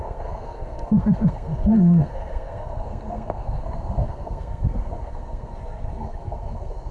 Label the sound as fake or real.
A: fake